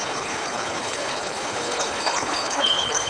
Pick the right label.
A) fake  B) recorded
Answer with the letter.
A